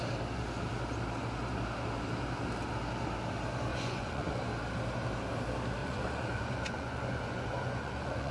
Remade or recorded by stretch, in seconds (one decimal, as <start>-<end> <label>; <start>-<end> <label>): 0.0-3.7 recorded; 3.7-4.3 remade; 4.3-5.8 recorded; 5.8-8.3 remade